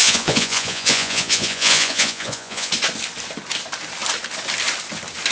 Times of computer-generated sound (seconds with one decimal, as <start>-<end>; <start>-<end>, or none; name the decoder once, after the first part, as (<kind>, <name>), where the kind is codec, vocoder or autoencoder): 0.0-2.7 (vocoder, Vocos)

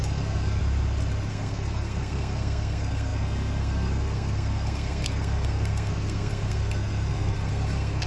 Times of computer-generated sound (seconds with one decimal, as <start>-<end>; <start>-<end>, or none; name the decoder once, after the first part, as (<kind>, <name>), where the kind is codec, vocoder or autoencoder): 0.0-0.6 (codec, SNAC); 1.3-8.1

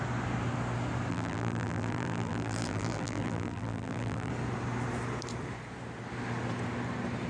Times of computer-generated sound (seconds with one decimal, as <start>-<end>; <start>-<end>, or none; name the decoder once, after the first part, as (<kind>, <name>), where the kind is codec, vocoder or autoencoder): 1.1-4.3 (vocoder, BigVGAN v2)

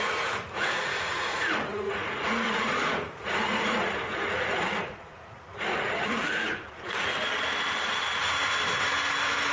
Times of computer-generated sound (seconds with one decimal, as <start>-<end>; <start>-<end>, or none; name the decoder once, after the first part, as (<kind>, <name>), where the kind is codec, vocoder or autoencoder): 0.0-7.1 (vocoder, Vocos)

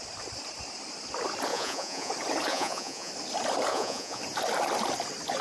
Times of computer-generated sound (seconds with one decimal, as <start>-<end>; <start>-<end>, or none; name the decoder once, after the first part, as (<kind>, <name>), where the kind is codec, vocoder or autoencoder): 1.5-2.1 (vocoder, Vocos); 2.5-3.1; 3.7-4.2

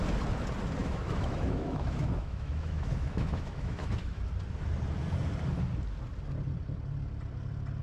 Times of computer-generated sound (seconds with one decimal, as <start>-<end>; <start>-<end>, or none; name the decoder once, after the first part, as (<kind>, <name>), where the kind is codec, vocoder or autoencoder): 0.8-4.2 (autoencoder, DAC-VAE)